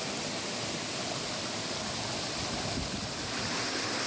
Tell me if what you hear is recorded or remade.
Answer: recorded